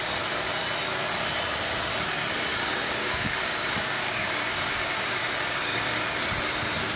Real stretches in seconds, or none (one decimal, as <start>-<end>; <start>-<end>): 0.0-2.5; 6.0-7.0